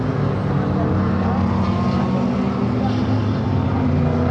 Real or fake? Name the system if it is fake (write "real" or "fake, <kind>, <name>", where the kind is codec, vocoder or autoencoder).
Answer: real